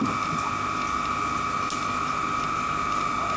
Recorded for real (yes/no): yes